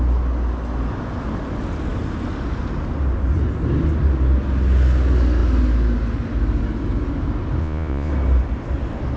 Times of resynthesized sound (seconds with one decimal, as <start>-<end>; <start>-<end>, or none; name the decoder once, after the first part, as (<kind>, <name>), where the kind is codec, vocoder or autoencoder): 7.6-8.1 (vocoder, Vocos)